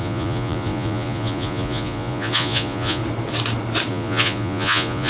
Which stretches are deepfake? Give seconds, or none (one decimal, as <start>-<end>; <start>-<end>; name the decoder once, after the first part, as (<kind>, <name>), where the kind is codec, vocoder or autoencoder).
0.0-3.0 (vocoder, Vocos); 3.9-5.1